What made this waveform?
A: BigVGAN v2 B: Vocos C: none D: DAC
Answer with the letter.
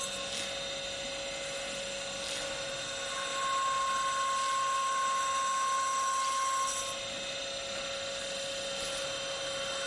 C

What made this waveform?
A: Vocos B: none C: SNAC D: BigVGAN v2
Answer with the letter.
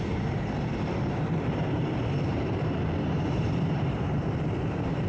D